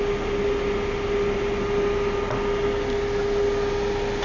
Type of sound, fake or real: real